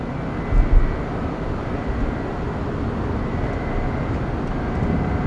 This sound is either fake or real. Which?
real